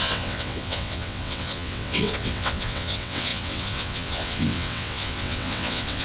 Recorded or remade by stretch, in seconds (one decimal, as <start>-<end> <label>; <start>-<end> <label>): 0.0-6.0 remade